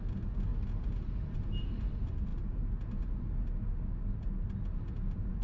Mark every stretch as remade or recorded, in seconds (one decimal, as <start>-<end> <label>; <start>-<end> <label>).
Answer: 0.0-5.4 recorded